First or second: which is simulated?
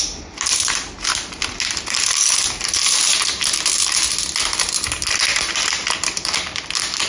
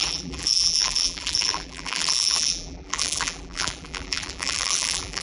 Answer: second